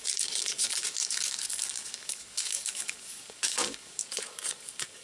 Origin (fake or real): fake